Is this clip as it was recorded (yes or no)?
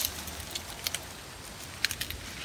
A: yes